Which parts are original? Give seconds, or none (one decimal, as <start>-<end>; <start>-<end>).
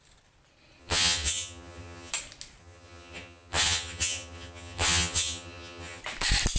0.0-0.8; 2.1-2.6; 6.0-6.6